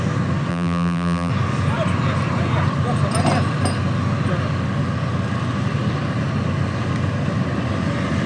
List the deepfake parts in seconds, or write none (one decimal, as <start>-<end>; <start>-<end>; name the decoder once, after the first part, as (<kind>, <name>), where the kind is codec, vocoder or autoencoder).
0.5-1.3 (vocoder, BigVGAN v2)